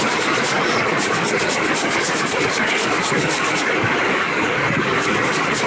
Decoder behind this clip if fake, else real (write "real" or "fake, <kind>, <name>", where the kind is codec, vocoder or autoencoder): fake, codec, DAC